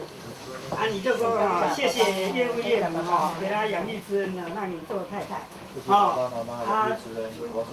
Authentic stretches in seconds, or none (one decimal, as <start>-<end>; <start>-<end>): 0.0-0.4; 1.1-3.2; 6.3-7.7